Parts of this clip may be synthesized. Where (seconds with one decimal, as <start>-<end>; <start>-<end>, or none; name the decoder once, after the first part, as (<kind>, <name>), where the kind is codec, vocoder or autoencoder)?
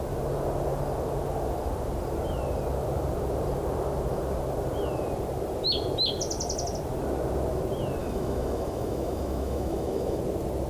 8.0-10.2 (autoencoder, DAC-VAE)